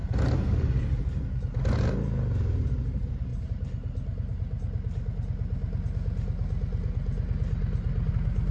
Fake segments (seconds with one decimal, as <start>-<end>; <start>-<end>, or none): 0.0-1.0